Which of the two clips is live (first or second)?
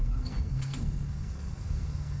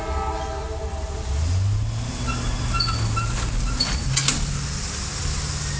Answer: second